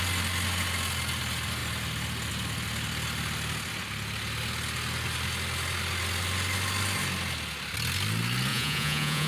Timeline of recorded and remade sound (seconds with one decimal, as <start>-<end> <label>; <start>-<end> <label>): 0.0-8.5 recorded; 8.5-9.3 remade